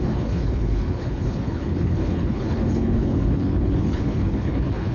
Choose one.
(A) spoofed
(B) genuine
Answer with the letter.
A